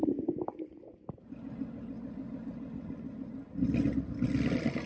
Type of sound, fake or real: real